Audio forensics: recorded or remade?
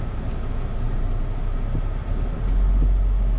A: recorded